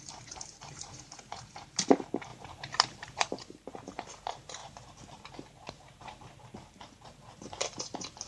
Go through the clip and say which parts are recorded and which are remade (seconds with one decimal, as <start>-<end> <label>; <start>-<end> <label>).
0.0-8.3 remade